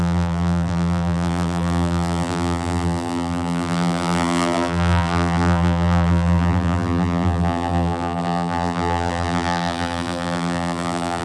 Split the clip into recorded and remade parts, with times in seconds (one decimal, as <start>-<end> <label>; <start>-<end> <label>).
0.0-11.2 remade